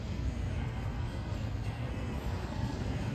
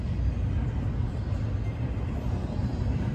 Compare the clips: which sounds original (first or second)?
second